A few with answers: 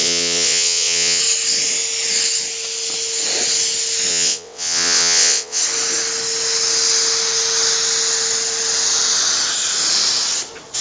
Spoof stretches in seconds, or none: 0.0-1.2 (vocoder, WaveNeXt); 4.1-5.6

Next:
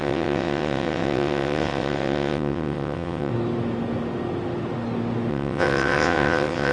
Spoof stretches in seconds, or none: 0.0-3.3 (vocoder, WaveNeXt); 5.3-6.7

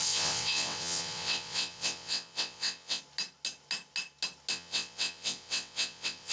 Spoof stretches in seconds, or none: 0.0-3.0 (vocoder, WaveNeXt); 4.5-6.3

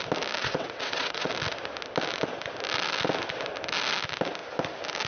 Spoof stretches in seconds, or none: 0.4-1.3 (vocoder, WaveNeXt)

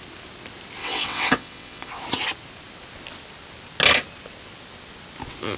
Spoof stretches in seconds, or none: 0.8-1.9 (vocoder, WaveNeXt)